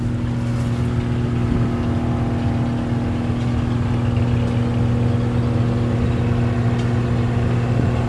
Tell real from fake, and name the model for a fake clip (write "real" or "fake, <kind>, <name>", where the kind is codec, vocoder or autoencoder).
real